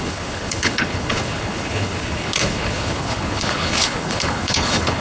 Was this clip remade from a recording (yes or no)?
yes